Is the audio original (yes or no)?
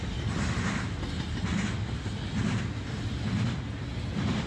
yes